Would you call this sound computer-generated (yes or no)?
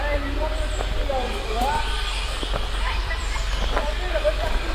no